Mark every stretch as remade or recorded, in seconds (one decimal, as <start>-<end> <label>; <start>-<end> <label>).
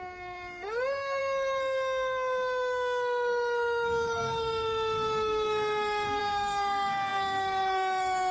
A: 0.0-8.3 remade